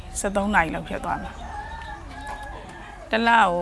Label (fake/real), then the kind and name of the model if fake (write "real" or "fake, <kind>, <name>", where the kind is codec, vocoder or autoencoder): real